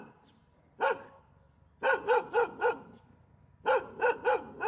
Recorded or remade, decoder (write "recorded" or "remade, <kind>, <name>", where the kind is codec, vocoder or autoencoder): recorded